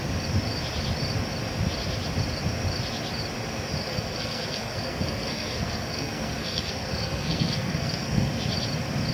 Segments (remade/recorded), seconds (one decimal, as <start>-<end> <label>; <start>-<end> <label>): 0.0-3.9 recorded; 3.9-8.3 remade; 8.3-9.1 recorded